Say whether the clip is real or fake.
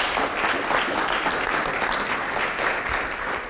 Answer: real